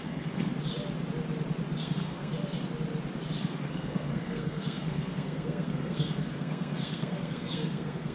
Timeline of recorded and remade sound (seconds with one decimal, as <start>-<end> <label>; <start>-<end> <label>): 0.0-0.5 remade; 0.5-1.8 recorded; 1.8-2.3 remade; 2.3-3.4 recorded; 3.4-8.1 remade